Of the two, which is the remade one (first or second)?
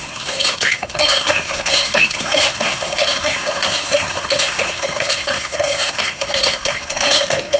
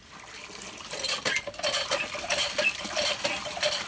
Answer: first